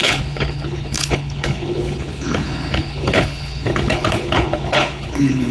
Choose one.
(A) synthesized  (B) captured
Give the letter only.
A